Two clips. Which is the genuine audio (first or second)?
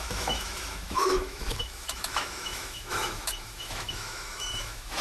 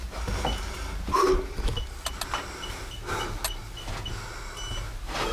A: second